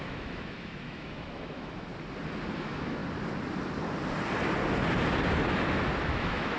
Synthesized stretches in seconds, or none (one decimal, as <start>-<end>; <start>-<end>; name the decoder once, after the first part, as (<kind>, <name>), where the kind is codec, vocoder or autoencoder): 0.0-1.9 (autoencoder, DAC-VAE); 2.5-3.0; 6.0-6.6